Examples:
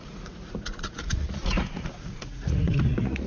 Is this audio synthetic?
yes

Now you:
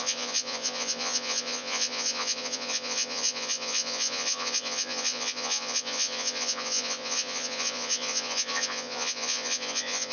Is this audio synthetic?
yes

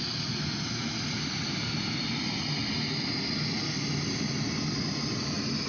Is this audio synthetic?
no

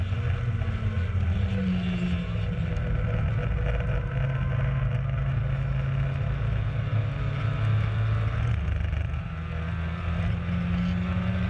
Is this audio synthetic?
no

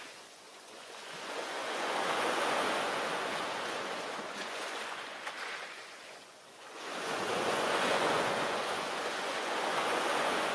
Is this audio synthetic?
yes